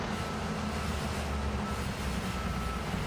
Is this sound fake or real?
real